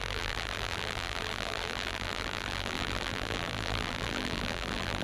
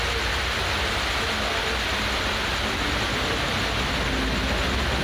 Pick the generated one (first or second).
first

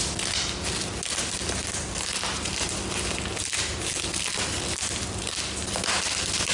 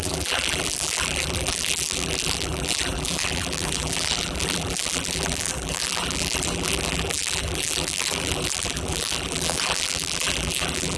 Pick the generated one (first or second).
second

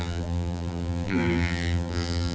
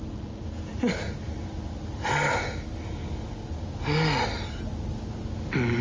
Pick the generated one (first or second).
first